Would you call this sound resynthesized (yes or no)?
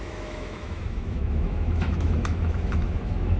yes